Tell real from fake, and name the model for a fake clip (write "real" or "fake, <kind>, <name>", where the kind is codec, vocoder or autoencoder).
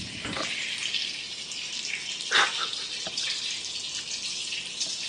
real